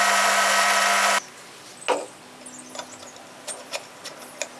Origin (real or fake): real